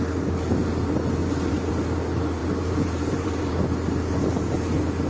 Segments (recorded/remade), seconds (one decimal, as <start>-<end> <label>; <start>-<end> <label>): 0.0-1.2 recorded; 1.2-1.7 remade; 1.7-2.4 recorded; 2.4-3.5 remade; 3.5-5.1 recorded